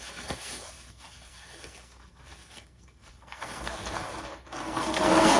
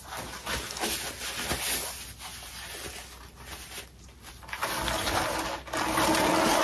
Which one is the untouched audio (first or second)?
second